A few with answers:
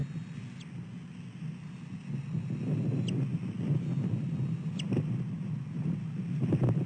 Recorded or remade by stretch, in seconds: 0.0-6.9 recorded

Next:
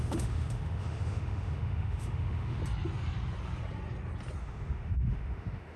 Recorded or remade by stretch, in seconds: 0.0-2.6 remade; 2.6-4.4 recorded; 4.4-5.8 remade

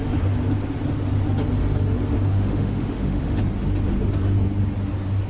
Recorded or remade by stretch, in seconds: 0.0-2.3 recorded; 2.3-3.4 remade; 3.4-5.3 recorded